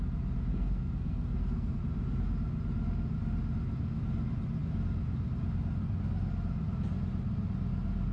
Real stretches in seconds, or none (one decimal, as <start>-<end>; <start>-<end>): 0.0-0.5; 1.8-8.1